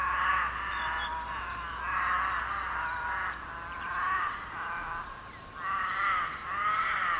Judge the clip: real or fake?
real